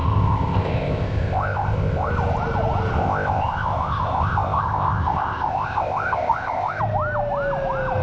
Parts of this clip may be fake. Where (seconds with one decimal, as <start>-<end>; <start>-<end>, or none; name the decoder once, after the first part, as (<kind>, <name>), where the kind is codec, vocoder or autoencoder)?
0.0-2.1 (codec, ZipCodec); 2.9-6.8